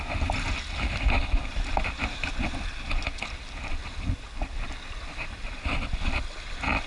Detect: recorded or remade recorded